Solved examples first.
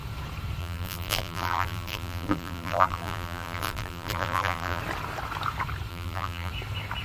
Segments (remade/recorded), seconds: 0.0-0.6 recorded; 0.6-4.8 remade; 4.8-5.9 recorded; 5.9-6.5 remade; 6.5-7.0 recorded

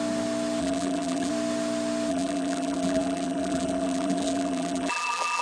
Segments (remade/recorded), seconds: 0.0-0.6 recorded; 0.6-1.3 remade; 1.3-2.1 recorded; 2.1-5.4 remade

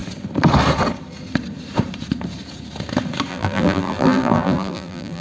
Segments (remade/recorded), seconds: 0.0-3.3 recorded; 3.3-5.2 remade

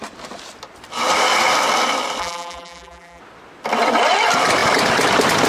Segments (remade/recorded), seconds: 0.0-2.2 recorded; 2.2-3.2 remade; 3.2-5.5 recorded

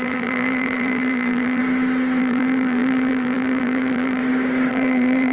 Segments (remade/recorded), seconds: 0.0-1.6 remade; 1.6-2.2 recorded; 2.2-4.2 remade; 4.2-4.7 recorded; 4.7-5.3 remade

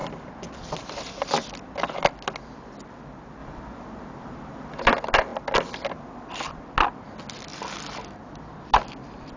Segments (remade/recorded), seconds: 0.0-3.4 recorded; 3.4-4.8 remade; 4.8-7.5 recorded; 7.5-8.2 remade; 8.2-9.4 recorded

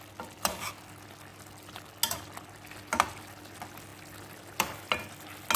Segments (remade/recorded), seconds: 0.0-5.6 recorded